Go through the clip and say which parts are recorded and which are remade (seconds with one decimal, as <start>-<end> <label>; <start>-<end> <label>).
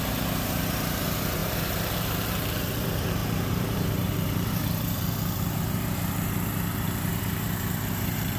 0.0-8.4 remade